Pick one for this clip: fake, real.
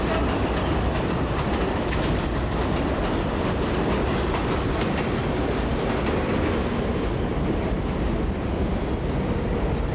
real